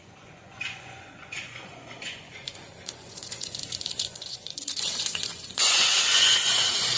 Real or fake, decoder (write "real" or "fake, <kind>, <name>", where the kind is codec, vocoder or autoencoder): fake, vocoder, Vocos